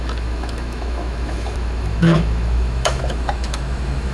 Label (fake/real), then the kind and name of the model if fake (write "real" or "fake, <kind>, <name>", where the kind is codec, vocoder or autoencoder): fake, autoencoder, DAC-VAE